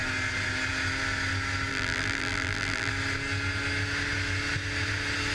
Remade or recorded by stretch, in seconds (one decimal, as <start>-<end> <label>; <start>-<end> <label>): 0.0-1.7 recorded; 1.7-2.9 remade; 2.9-5.3 recorded